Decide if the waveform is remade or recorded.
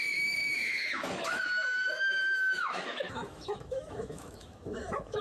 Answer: remade